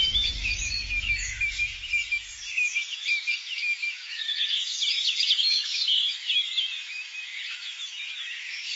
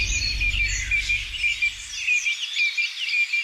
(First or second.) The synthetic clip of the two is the first